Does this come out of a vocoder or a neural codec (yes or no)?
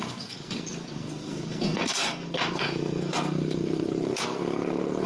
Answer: yes